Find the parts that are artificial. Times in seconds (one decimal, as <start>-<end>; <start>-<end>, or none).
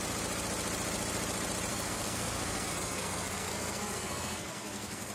1.7-5.1